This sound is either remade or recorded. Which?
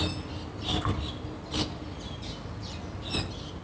recorded